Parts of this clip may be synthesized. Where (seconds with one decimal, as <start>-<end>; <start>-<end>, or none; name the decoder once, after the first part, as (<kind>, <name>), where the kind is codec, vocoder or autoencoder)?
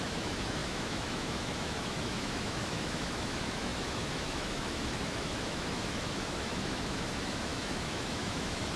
0.0-8.8 (autoencoder, DAC-VAE)